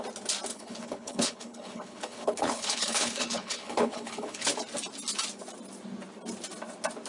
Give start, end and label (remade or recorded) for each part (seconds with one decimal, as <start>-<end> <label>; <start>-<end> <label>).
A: 0.0-0.5 recorded; 0.5-4.5 remade; 4.5-7.1 recorded

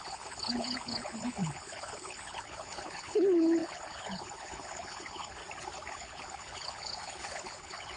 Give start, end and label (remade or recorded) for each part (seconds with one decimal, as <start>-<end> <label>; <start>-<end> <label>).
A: 0.0-5.4 remade; 5.4-5.9 recorded; 5.9-8.0 remade

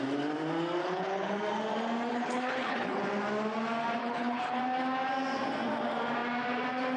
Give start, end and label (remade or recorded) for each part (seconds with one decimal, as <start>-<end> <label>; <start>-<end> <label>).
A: 0.0-0.8 recorded; 0.8-1.4 remade; 1.4-2.1 recorded; 2.1-3.0 remade; 3.0-4.0 recorded; 4.0-4.6 remade; 4.6-7.0 recorded

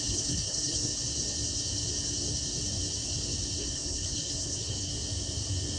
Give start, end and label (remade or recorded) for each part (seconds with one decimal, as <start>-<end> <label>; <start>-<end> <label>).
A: 0.0-0.9 remade; 0.9-3.6 recorded; 3.6-4.9 remade; 4.9-5.8 recorded

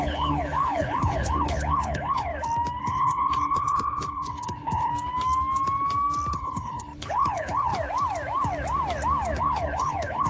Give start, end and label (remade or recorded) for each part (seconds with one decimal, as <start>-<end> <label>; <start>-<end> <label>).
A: 0.0-2.3 remade; 2.3-2.8 recorded; 2.8-4.9 remade; 4.9-6.3 recorded; 6.3-7.7 remade; 7.7-9.4 recorded; 9.4-10.3 remade

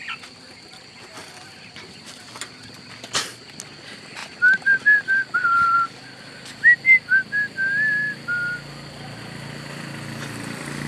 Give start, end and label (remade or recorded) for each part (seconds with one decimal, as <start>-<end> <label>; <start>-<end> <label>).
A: 0.0-10.9 recorded